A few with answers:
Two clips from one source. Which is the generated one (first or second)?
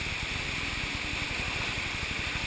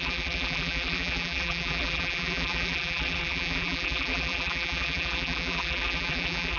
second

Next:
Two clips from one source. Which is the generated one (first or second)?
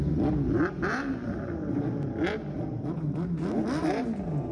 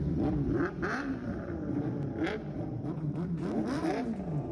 second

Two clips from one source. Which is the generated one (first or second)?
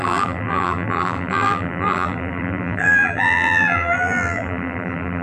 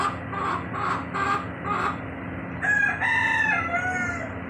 first